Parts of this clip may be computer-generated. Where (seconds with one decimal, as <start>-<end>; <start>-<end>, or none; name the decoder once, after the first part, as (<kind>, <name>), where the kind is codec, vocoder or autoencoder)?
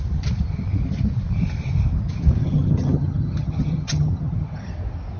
2.4-4.7 (vocoder, HiFi-GAN)